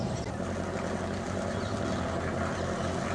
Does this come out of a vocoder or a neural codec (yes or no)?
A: no